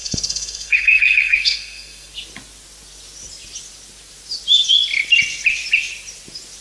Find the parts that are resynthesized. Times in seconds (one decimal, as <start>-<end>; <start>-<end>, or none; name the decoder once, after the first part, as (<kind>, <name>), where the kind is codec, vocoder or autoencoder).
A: 0.0-2.1 (codec, SNAC)